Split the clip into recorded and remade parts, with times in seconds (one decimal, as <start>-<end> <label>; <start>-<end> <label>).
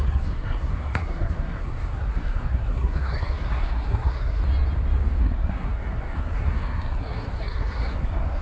0.0-4.4 remade; 4.4-5.2 recorded; 5.2-8.4 remade